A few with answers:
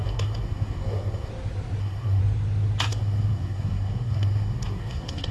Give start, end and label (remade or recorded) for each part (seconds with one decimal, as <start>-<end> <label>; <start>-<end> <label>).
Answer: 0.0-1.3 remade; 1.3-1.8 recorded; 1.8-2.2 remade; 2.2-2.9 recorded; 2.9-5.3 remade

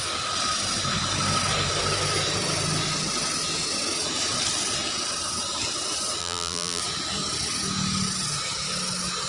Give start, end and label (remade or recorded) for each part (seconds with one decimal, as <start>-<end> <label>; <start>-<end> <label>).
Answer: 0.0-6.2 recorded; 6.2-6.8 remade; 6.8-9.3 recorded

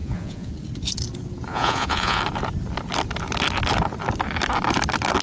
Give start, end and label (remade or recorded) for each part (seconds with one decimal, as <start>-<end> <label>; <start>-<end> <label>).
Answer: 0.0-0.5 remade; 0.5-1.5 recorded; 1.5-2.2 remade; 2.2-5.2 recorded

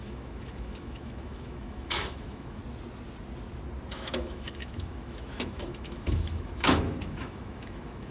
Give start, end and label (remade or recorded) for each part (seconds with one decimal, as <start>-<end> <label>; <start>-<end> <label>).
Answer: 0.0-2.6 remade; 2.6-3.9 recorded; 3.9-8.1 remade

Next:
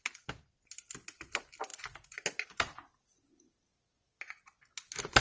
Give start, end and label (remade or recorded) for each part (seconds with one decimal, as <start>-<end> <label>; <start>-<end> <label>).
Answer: 0.0-5.2 recorded

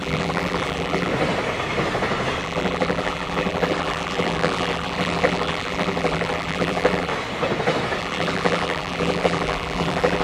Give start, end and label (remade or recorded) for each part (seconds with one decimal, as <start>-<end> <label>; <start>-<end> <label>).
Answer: 0.0-1.1 remade; 1.1-2.4 recorded; 2.4-7.1 remade; 7.1-8.0 recorded; 8.0-10.2 remade

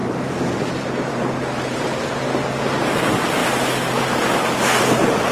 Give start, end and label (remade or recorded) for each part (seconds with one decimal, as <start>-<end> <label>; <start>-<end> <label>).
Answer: 0.0-2.2 remade; 2.2-5.3 recorded

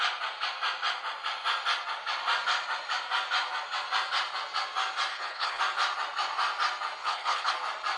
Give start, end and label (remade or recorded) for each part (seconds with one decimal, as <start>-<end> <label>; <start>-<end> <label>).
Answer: 0.0-5.1 recorded; 5.1-5.6 remade; 5.6-7.0 recorded; 7.0-7.5 remade; 7.5-8.0 recorded